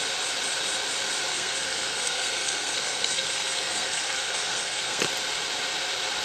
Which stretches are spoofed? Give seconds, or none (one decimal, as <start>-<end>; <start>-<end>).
1.3-5.0